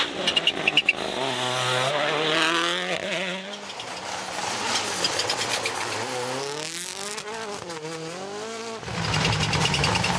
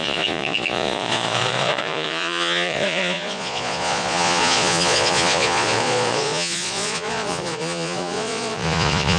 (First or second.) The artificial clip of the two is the second